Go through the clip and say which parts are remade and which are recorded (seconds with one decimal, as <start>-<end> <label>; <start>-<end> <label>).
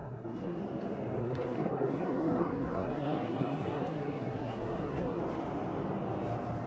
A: 0.0-0.6 remade; 0.6-1.2 recorded; 1.2-5.2 remade; 5.2-6.7 recorded